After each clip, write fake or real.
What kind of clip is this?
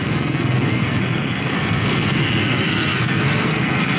fake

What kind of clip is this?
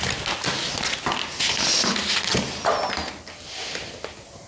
real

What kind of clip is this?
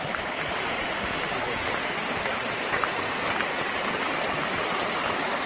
real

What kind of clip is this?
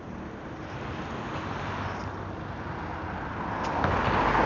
real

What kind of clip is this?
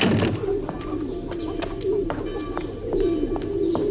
real